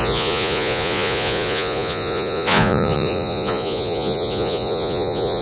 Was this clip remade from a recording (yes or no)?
yes